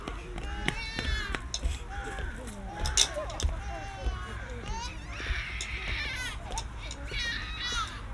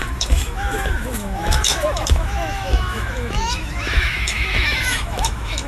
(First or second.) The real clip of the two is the first